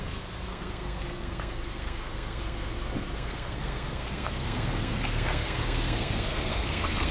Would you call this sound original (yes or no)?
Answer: no